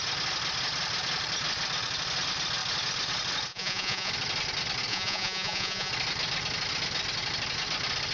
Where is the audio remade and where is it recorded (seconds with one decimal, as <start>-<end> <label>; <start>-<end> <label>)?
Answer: 0.0-3.5 recorded; 3.5-4.1 remade; 4.1-4.9 recorded; 4.9-5.9 remade; 5.9-8.1 recorded